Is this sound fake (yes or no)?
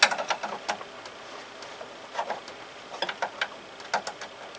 no